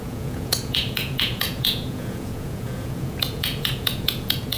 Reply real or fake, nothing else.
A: fake